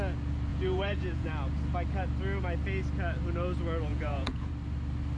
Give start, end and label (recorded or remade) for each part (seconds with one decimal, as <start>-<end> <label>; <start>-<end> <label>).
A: 0.0-0.5 recorded; 0.5-1.3 remade; 1.3-3.9 recorded; 3.9-4.5 remade; 4.5-5.2 recorded